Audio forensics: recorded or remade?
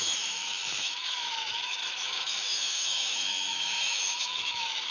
remade